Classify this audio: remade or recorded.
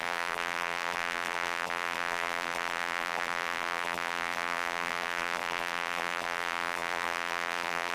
remade